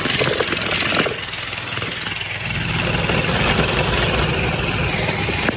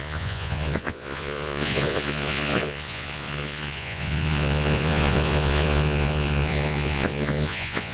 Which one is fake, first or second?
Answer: second